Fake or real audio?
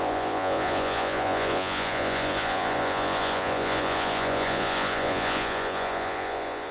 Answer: fake